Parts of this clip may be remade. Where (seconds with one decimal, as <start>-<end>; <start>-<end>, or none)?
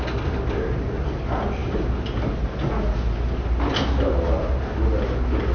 none